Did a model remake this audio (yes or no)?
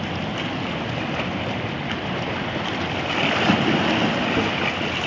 no